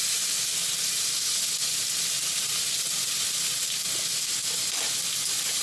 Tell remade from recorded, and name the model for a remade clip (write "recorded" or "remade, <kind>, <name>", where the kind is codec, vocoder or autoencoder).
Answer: recorded